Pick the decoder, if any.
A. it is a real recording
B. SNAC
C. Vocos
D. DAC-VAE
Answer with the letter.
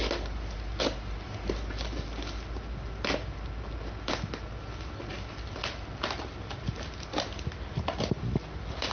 A